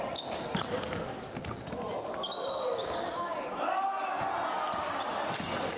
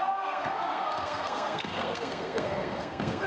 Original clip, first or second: first